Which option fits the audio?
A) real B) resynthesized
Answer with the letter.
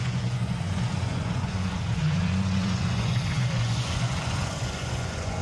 B